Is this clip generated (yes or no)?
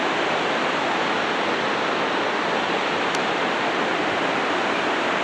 no